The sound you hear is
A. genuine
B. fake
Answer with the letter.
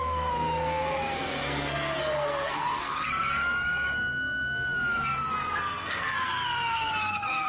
B